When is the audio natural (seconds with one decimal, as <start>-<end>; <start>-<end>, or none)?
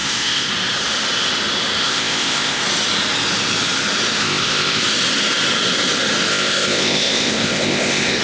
0.5-1.8; 2.6-4.2; 4.8-6.3